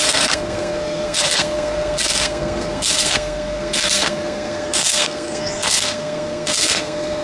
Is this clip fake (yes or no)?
yes